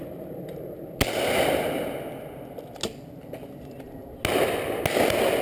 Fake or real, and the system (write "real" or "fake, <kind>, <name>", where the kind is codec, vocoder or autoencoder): real